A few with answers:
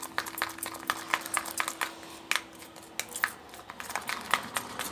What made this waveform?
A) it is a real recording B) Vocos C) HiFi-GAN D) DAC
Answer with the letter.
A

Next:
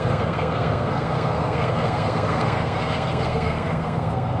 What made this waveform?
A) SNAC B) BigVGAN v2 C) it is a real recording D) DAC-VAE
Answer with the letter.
A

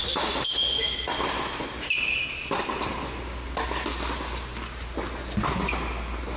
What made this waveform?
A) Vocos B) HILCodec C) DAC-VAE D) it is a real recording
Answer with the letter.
D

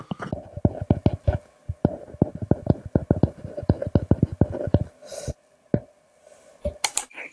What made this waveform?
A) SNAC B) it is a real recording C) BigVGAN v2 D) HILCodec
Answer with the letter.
B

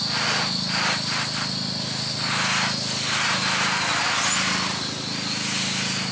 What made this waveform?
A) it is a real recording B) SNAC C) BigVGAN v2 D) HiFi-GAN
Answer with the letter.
A